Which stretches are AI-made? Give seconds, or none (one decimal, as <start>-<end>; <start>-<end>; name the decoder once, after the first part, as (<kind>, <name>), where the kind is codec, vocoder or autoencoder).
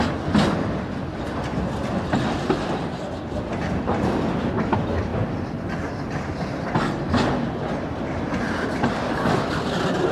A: none